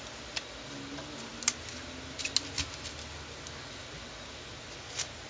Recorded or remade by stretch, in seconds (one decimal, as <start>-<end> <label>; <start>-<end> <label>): 0.0-5.3 recorded